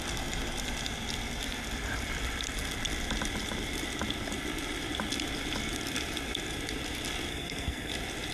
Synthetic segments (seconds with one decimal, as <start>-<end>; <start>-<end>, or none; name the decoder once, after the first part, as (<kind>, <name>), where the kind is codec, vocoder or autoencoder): 7.3-7.9 (codec, SNAC)